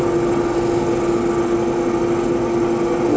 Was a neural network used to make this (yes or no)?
no